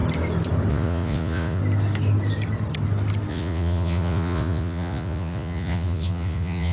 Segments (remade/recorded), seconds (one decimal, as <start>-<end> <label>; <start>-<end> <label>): 0.0-0.7 recorded; 0.7-1.6 remade; 1.6-3.3 recorded; 3.3-6.7 remade